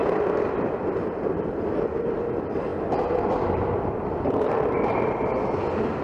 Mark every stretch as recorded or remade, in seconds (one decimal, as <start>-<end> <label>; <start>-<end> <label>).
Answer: 0.0-2.7 recorded; 2.7-4.9 remade; 4.9-6.0 recorded